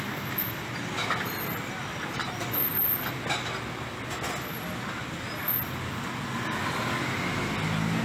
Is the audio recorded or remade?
recorded